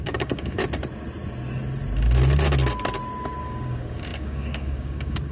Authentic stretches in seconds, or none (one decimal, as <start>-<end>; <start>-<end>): 0.6-3.4